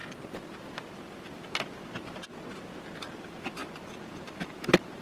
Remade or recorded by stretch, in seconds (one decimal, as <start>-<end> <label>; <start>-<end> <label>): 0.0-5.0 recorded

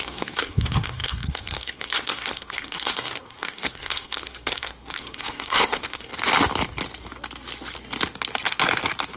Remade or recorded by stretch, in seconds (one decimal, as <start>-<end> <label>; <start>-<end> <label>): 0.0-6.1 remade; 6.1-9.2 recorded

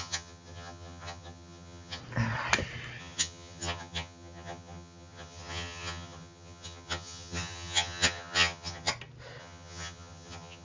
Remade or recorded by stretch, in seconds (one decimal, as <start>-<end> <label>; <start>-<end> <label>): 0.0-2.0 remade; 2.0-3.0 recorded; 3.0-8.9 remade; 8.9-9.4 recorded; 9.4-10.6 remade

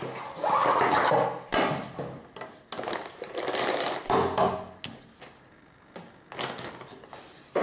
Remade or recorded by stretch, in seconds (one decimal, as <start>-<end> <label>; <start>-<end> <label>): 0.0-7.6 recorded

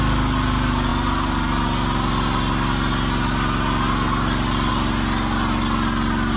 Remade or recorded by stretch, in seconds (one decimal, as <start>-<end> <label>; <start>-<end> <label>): 0.0-6.4 recorded

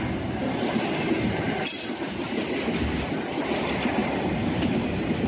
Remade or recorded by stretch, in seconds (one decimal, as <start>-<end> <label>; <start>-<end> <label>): 0.0-4.0 recorded; 4.0-5.3 remade

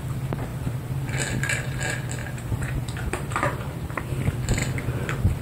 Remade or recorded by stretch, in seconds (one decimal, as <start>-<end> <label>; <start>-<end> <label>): 0.0-2.2 recorded; 2.2-4.0 remade; 4.0-5.4 recorded